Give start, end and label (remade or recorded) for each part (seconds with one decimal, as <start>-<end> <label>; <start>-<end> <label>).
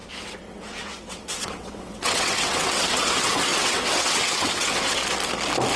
0.0-5.0 remade; 5.0-5.8 recorded